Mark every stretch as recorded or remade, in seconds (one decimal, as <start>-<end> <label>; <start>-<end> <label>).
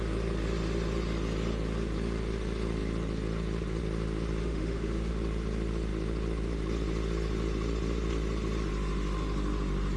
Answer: 0.0-4.4 recorded; 4.4-5.1 remade; 5.1-10.0 recorded